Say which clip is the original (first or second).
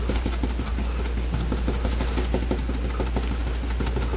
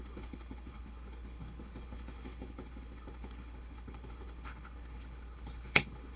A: first